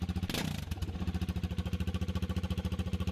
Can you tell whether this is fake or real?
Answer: real